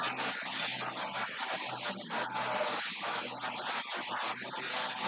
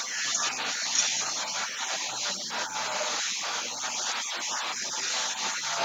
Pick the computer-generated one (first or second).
second